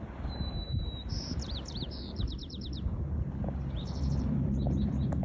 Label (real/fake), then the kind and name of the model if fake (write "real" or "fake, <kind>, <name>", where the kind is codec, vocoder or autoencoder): fake, vocoder, BigVGAN v2